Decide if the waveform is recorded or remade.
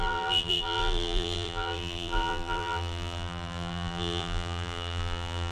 remade